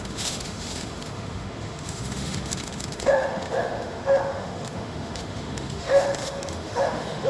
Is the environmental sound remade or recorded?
remade